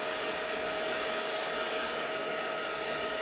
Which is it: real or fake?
fake